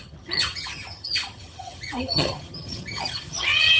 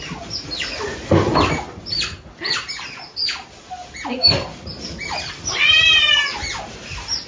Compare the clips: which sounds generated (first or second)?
first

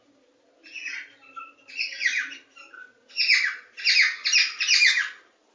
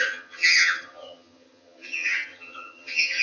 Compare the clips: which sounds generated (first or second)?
second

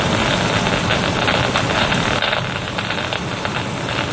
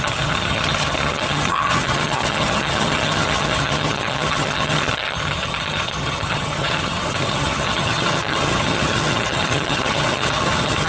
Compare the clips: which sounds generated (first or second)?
second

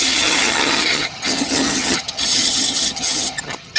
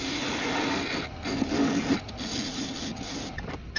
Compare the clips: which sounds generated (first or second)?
first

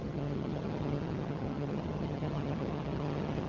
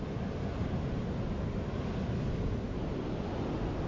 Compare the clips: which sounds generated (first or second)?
first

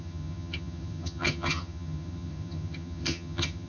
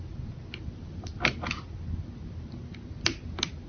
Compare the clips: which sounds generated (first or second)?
first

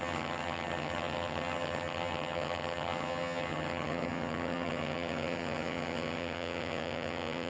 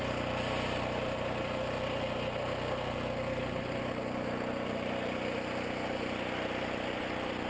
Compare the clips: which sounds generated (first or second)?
first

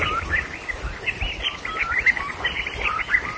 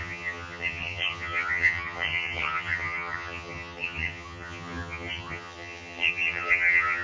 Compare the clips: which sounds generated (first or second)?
second